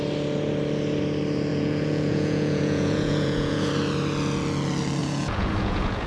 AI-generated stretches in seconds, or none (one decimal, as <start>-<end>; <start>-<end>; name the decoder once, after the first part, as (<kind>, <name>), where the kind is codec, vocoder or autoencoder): 1.5-3.7 (vocoder, Vocos); 5.0-6.1